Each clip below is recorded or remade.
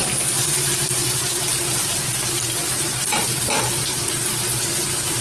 remade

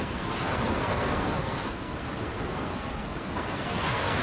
remade